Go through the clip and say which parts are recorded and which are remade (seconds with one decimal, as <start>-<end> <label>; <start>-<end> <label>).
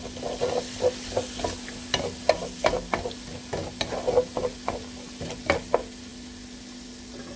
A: 0.0-7.4 recorded